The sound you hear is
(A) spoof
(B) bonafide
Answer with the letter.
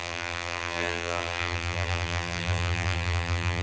A